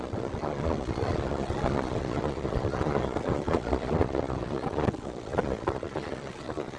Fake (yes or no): yes